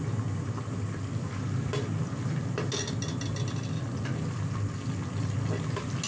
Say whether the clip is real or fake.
real